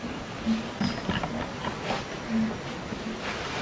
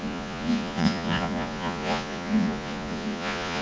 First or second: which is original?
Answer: first